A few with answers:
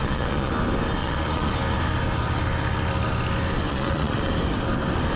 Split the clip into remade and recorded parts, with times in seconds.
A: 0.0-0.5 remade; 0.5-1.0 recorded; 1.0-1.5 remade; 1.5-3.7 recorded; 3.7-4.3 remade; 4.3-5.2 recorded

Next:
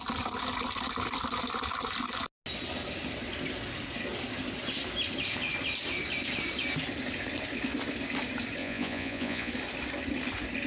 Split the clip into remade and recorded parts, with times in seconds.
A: 0.0-8.6 recorded; 8.6-9.5 remade; 9.5-10.7 recorded

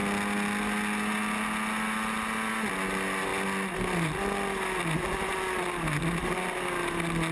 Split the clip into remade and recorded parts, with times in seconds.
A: 0.0-7.3 recorded

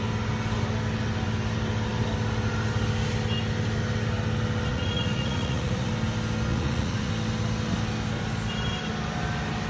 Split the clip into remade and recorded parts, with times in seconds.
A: 0.0-4.7 recorded; 4.7-5.9 remade; 5.9-6.5 recorded; 6.5-7.1 remade; 7.1-9.7 recorded